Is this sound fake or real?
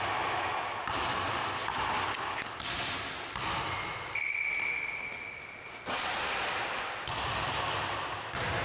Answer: real